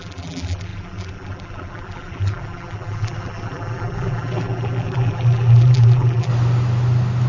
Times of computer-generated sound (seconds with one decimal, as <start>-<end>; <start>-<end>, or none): 0.0-6.3